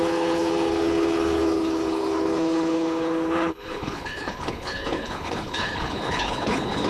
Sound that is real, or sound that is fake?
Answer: fake